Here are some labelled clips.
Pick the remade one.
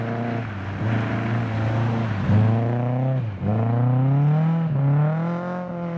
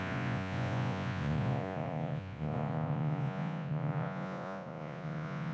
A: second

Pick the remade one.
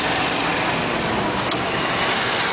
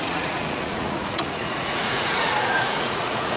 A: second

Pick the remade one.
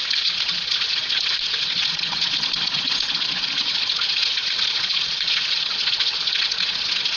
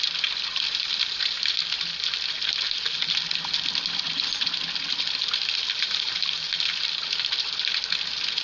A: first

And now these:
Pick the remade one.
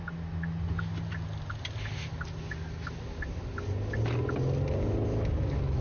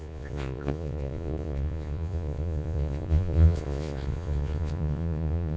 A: second